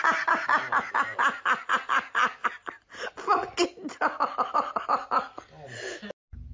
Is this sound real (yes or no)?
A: yes